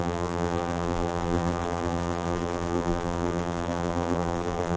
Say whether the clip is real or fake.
fake